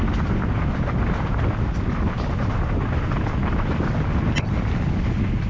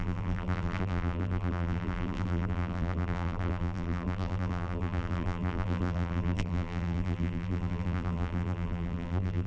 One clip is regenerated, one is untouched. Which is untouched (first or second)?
first